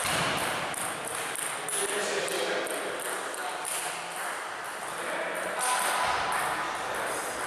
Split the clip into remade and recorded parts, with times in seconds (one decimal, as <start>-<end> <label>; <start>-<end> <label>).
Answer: 0.0-7.5 recorded